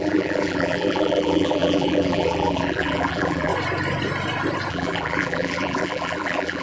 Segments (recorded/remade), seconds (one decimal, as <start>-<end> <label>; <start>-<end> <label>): 0.0-3.5 remade; 3.5-4.7 recorded; 4.7-6.6 remade